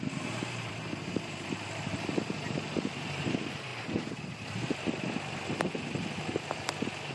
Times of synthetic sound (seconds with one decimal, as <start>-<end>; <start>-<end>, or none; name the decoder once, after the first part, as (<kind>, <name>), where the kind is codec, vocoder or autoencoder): 0.0-3.7 (vocoder, BigVGAN v2)